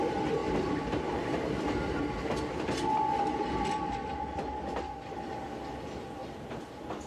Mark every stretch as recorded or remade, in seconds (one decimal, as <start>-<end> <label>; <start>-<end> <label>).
0.0-0.4 recorded; 0.4-1.5 remade; 1.5-7.1 recorded